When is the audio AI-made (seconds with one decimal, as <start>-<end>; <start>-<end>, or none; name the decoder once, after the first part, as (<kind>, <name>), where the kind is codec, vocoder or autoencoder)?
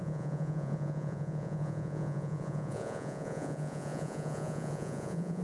0.0-5.4 (vocoder, Vocos)